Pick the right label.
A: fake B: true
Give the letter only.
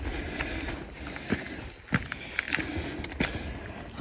B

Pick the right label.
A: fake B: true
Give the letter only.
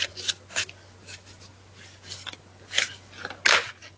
B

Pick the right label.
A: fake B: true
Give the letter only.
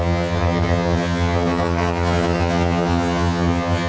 A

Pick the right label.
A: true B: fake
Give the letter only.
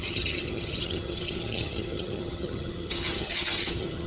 B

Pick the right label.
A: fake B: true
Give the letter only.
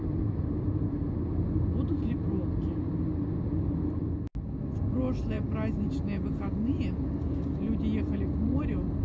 B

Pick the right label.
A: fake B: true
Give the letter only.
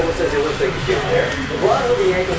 B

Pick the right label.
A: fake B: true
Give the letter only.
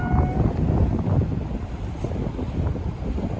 B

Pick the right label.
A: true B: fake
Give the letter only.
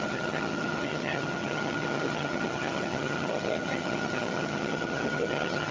B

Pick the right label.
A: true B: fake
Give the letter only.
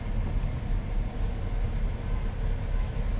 A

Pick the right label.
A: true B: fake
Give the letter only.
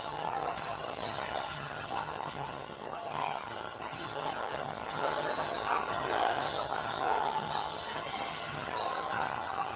B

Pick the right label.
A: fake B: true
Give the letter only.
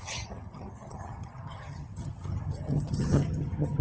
A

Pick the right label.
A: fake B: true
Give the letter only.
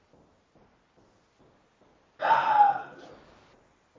B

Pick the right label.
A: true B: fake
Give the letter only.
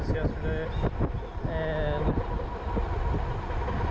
A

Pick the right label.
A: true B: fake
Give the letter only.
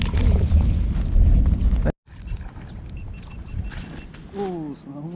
A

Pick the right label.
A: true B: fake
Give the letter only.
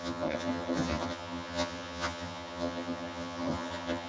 B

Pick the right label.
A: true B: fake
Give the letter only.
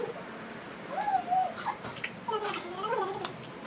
A